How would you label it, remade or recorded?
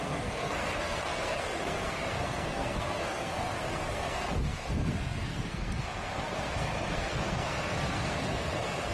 remade